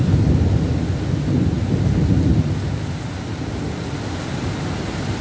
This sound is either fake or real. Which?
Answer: real